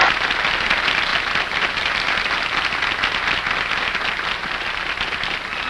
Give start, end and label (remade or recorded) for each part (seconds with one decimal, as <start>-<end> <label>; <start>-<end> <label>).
0.0-5.7 recorded